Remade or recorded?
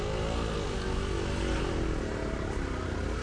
recorded